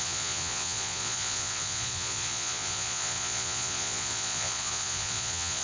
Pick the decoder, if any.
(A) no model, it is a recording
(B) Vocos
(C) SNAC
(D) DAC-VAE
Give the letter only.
B